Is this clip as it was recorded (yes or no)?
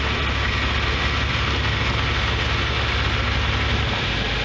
yes